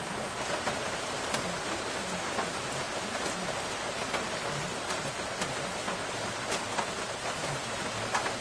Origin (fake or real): real